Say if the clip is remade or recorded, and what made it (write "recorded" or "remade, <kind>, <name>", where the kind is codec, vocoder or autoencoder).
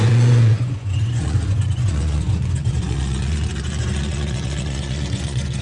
remade, vocoder, Vocos